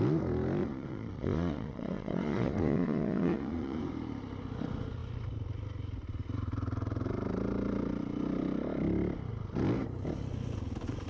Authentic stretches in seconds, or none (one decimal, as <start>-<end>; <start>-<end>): 0.0-0.6; 3.8-11.1